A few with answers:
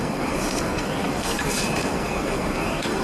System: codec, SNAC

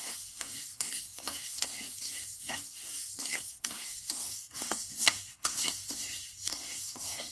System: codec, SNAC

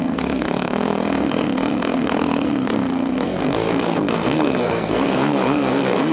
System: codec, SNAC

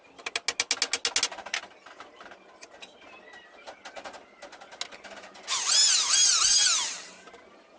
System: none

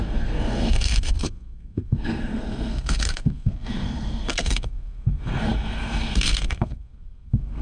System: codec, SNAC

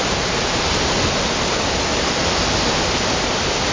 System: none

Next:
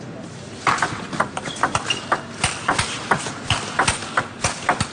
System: none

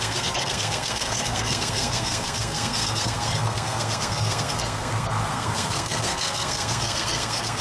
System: codec, SNAC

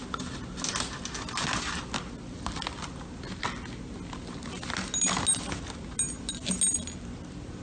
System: none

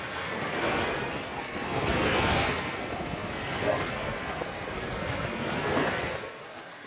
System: codec, SNAC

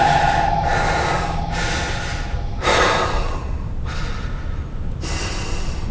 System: none